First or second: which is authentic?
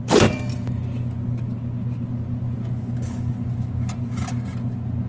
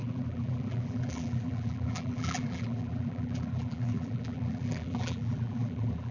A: first